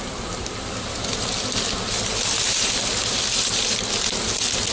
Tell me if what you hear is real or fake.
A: real